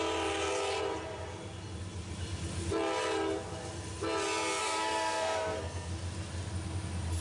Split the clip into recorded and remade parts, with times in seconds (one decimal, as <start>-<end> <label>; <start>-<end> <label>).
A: 0.0-4.6 recorded; 4.6-5.9 remade; 5.9-7.2 recorded